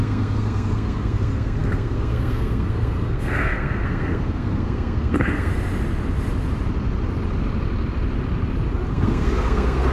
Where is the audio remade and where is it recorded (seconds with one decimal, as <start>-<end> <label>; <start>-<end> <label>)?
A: 0.0-5.5 remade; 5.5-8.9 recorded; 8.9-9.9 remade